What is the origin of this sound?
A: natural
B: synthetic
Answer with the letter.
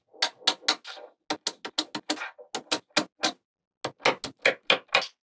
A